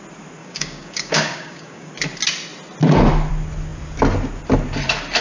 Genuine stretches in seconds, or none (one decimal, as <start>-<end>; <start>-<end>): 0.0-0.4; 1.9-5.2